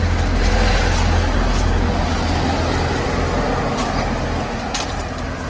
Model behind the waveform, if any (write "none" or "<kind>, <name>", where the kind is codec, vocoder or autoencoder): none